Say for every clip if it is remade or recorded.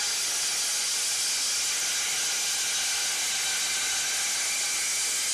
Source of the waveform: recorded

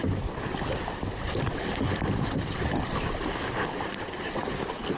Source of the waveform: remade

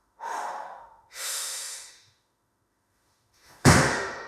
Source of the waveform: remade